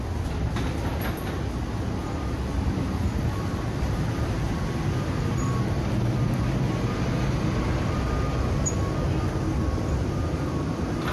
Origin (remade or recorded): recorded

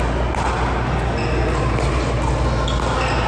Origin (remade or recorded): recorded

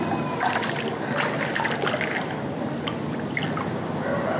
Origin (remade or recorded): recorded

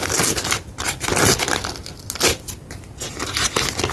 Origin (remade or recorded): recorded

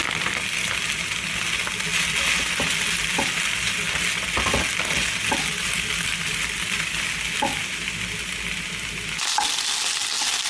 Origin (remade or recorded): recorded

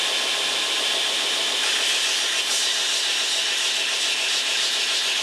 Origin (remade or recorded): remade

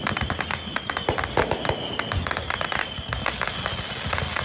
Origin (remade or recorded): recorded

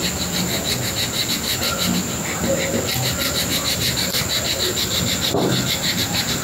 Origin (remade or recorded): recorded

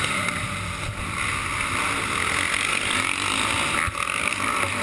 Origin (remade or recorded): recorded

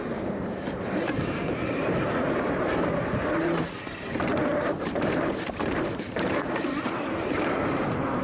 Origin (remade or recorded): remade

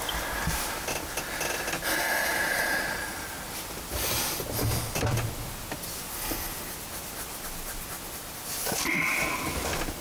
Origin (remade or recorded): recorded